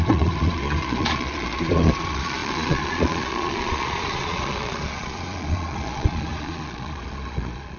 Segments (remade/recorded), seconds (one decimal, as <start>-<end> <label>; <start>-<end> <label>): 0.0-7.8 remade